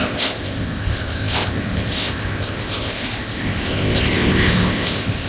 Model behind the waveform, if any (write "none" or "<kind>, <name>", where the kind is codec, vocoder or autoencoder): codec, ZipCodec